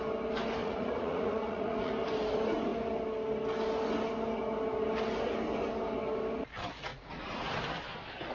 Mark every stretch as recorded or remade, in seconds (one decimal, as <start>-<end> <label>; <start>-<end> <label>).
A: 0.0-0.6 recorded; 0.6-1.9 remade; 1.9-6.9 recorded; 6.9-7.5 remade; 7.5-8.3 recorded